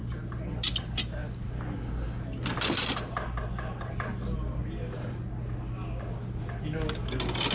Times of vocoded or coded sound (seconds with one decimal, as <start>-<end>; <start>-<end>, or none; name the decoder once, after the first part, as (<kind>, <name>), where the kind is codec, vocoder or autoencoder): none